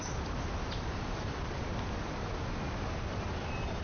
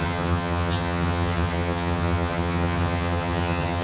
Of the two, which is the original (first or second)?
first